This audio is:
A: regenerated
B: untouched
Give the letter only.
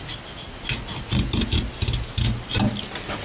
B